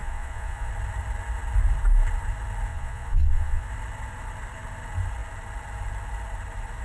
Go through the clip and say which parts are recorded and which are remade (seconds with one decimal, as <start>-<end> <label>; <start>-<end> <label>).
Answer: 0.0-0.7 remade; 0.7-2.7 recorded; 2.7-3.7 remade; 3.7-6.8 recorded